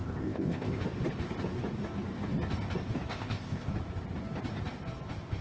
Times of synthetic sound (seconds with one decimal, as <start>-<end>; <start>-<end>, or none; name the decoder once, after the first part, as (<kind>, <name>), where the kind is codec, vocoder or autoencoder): 0.0-0.8 (codec, ZipCodec); 3.1-3.7